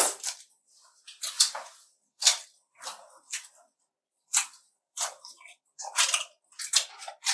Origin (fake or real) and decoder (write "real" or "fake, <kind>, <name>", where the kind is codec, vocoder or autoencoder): fake, vocoder, BigVGAN v2